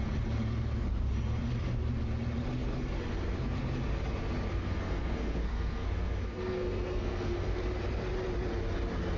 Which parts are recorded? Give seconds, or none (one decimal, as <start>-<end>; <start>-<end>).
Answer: 0.0-4.5; 7.6-9.2